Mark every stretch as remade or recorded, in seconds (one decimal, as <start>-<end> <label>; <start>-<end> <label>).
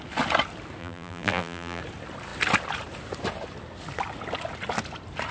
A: 0.0-0.8 recorded; 0.8-1.8 remade; 1.8-5.3 recorded